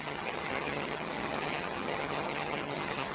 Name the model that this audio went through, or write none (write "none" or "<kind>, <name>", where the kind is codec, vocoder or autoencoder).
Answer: vocoder, HiFi-GAN